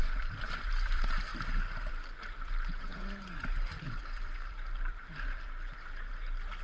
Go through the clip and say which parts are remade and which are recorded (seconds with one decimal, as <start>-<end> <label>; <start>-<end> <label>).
0.0-6.6 remade